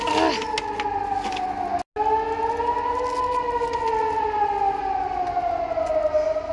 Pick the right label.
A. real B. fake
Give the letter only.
A